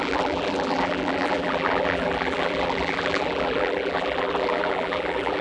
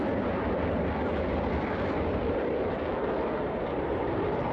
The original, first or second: second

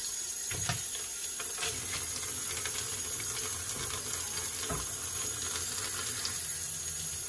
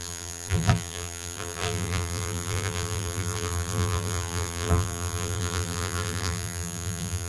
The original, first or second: first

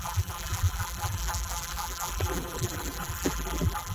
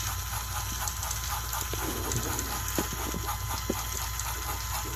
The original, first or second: second